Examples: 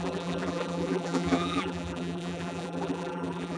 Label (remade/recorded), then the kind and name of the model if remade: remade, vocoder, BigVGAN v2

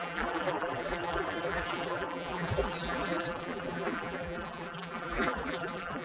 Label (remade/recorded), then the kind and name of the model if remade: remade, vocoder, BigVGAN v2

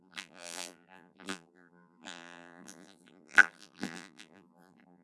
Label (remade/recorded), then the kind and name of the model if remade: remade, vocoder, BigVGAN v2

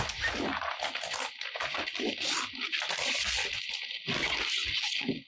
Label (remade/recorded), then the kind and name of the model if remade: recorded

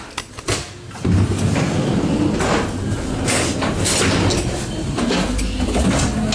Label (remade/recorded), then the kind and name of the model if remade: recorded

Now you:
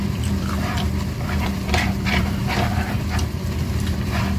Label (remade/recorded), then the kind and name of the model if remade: remade, vocoder, BigVGAN v2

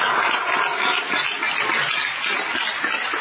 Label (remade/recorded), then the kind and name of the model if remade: recorded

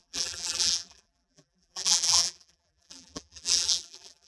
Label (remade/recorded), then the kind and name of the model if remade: remade, vocoder, BigVGAN v2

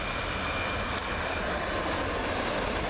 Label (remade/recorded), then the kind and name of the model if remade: recorded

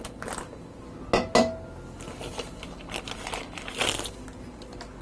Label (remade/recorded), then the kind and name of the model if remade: recorded